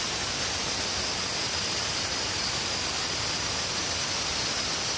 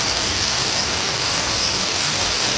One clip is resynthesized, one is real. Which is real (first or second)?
first